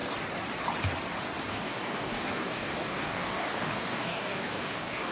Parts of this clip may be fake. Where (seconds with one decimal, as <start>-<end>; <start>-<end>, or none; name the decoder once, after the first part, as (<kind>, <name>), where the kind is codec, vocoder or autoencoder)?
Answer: 1.5-5.1 (codec, DAC)